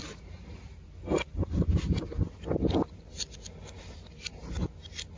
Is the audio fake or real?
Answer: real